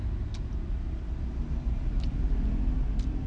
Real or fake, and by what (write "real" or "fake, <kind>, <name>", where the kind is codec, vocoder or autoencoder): real